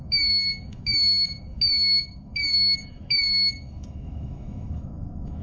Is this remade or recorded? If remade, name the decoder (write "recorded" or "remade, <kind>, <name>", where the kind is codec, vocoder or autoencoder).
remade, autoencoder, DAC-VAE